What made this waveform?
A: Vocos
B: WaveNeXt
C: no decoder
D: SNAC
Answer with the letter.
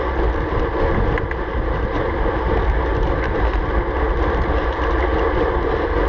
C